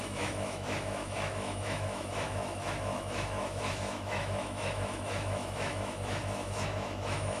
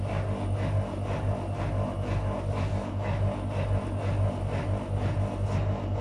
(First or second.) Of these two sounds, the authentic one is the second